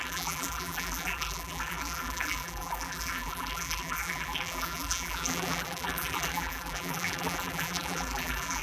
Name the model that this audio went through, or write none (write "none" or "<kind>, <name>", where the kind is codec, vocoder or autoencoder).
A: vocoder, BigVGAN v2